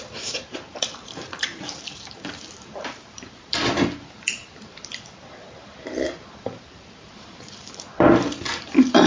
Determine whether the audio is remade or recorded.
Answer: remade